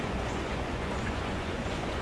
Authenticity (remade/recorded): remade